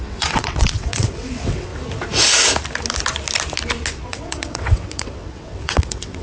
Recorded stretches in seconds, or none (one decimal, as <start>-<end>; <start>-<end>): 1.7-4.0